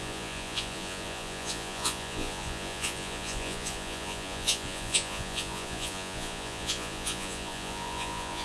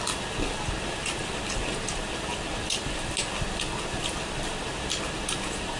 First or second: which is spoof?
first